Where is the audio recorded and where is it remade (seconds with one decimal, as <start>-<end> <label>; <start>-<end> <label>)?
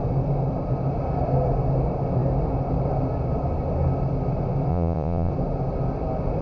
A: 0.0-4.7 recorded; 4.7-5.3 remade; 5.3-6.4 recorded